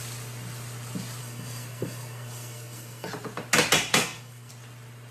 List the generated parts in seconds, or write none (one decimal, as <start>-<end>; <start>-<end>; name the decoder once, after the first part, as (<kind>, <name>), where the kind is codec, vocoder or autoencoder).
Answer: 1.2-3.1 (codec, SNAC); 3.9-4.5